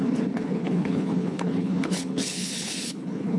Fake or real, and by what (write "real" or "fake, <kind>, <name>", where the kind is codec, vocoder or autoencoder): fake, codec, HILCodec